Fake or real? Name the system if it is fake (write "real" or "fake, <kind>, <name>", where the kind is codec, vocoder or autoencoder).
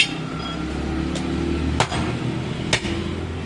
real